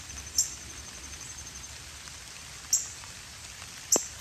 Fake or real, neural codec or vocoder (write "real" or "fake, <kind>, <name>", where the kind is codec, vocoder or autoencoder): real